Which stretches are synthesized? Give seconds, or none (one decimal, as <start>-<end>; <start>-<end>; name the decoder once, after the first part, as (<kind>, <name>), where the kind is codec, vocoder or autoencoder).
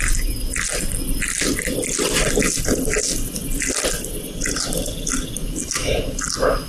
none